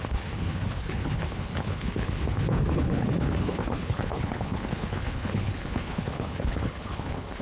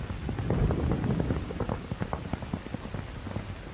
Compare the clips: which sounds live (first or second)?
second